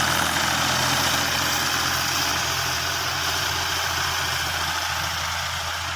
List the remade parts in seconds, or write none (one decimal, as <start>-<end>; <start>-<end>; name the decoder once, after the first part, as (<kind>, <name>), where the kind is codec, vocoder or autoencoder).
2.3-3.5 (vocoder, BigVGAN v2)